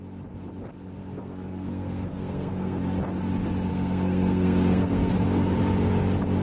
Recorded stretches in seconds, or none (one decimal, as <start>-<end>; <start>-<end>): 0.0-1.0; 2.8-3.7; 5.1-6.4